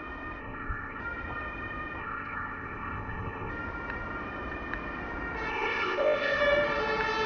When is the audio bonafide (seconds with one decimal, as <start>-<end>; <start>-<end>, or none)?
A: 0.0-0.4; 1.0-2.0; 3.5-5.5; 6.4-7.3